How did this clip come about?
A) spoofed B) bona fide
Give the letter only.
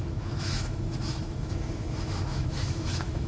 A